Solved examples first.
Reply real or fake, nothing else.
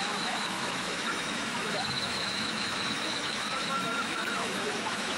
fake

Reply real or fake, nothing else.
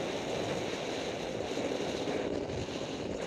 real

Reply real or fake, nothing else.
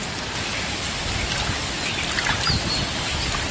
real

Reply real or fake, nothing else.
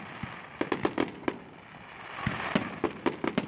real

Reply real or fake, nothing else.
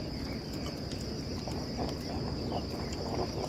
real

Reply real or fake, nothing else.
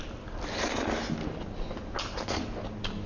real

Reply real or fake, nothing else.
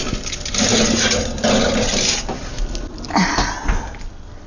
real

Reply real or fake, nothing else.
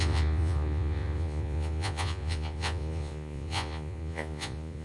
fake